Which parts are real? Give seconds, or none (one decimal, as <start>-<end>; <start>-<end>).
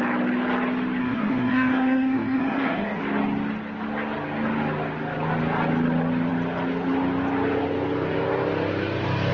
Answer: 0.0-1.0; 3.0-9.3